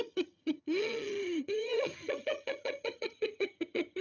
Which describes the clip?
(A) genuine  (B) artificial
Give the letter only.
B